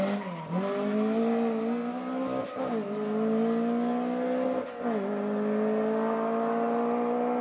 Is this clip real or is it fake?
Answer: real